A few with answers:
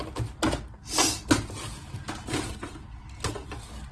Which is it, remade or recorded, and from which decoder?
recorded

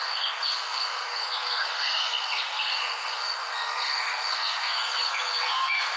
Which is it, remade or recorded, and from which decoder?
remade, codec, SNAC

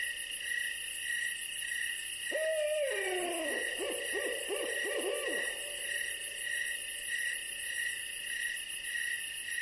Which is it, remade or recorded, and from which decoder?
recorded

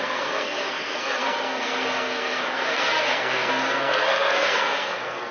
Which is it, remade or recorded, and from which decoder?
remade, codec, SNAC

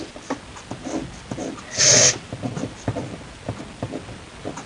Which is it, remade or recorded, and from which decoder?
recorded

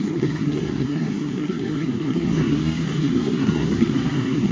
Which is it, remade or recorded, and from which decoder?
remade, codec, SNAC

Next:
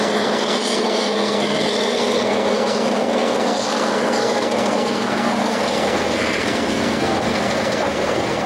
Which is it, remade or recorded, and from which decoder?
remade, codec, SNAC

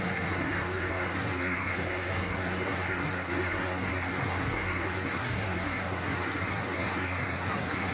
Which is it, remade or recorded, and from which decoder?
remade, codec, SNAC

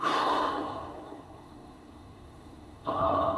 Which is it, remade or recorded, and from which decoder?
remade, codec, SNAC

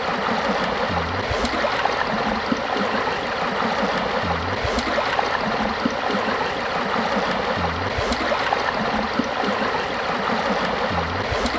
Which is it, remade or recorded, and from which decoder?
recorded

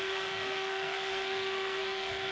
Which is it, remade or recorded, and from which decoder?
remade, codec, SNAC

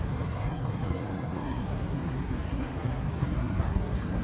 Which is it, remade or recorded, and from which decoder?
remade, codec, SNAC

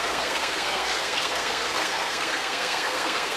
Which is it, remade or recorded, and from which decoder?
remade, codec, SNAC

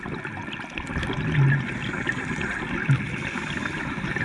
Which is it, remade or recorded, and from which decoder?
recorded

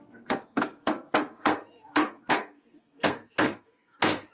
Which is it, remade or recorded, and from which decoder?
remade, codec, SNAC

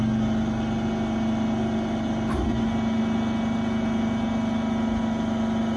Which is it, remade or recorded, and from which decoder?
recorded